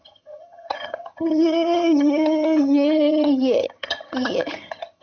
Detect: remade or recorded remade